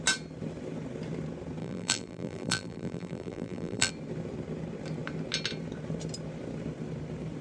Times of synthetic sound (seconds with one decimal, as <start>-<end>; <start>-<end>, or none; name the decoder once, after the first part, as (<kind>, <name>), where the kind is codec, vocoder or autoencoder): 1.6-3.9 (vocoder, BigVGAN v2)